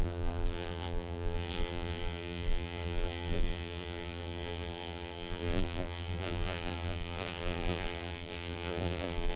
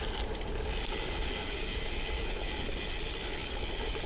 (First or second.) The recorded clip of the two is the second